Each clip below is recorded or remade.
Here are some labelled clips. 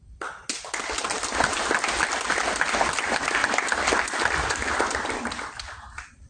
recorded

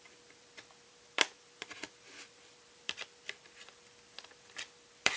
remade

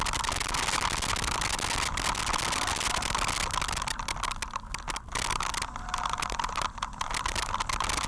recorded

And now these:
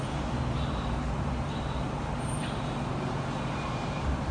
remade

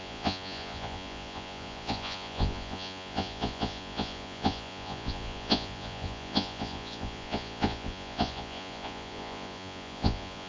remade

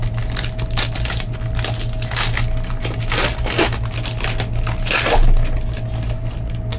recorded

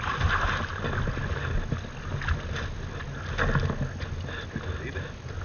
recorded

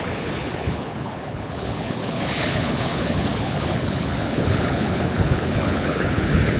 remade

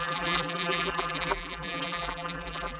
remade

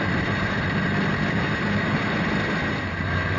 recorded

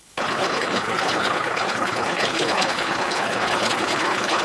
remade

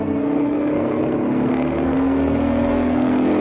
remade